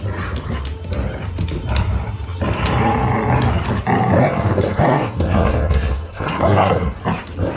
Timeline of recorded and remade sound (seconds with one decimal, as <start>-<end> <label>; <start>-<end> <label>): 0.0-4.2 recorded; 4.2-7.0 remade; 7.0-7.6 recorded